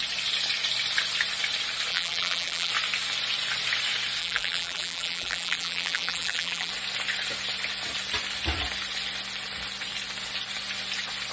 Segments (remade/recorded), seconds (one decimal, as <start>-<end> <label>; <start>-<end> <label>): 0.0-1.9 recorded; 1.9-2.7 remade; 2.7-4.2 recorded; 4.2-6.7 remade; 6.7-11.3 recorded